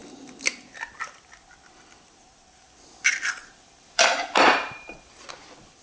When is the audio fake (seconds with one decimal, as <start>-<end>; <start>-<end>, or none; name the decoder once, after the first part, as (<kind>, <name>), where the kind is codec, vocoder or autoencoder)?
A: 3.4-5.3 (vocoder, BigVGAN v2)